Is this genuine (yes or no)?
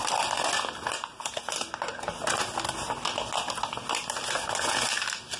yes